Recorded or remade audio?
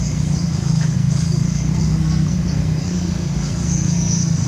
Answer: remade